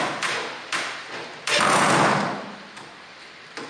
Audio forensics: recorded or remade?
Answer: recorded